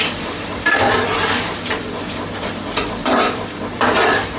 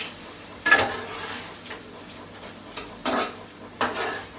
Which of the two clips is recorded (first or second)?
second